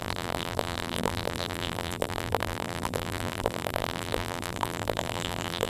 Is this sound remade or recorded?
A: remade